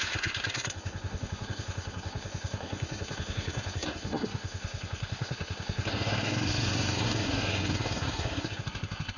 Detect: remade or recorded remade